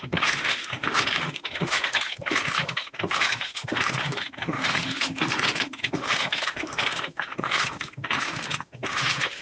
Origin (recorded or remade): remade